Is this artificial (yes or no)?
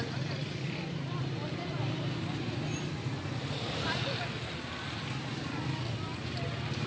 no